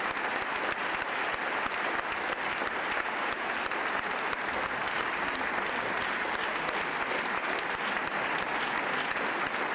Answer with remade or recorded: recorded